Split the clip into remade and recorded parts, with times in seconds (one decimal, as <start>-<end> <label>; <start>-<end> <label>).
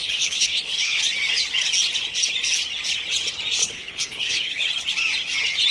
0.0-1.0 remade; 1.0-3.6 recorded; 3.6-4.7 remade; 4.7-5.7 recorded